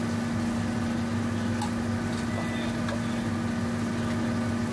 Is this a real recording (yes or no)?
yes